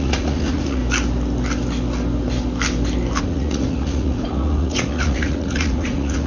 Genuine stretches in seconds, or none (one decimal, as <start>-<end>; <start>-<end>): 0.8-3.2